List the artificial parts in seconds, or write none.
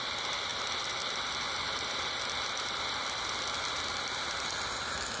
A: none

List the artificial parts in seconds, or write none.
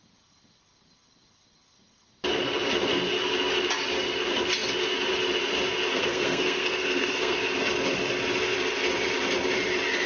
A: 5.9-7.4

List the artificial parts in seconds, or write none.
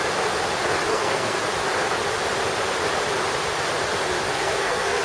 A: 0.9-1.4; 4.3-5.0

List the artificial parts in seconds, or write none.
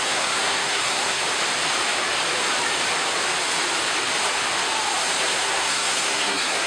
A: 0.0-1.2; 5.2-6.7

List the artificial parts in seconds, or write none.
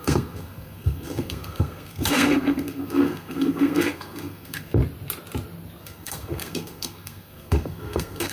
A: 0.0-4.8; 5.8-8.3